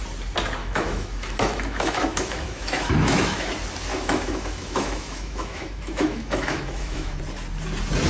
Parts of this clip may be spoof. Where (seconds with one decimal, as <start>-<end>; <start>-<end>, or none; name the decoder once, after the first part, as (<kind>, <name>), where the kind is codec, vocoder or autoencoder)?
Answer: 0.6-3.5 (autoencoder, DAC-VAE); 3.9-7.2